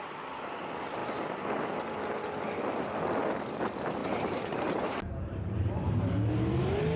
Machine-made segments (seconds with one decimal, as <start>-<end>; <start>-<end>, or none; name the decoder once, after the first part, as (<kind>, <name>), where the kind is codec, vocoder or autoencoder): 4.0-6.1 (vocoder, BigVGAN v2)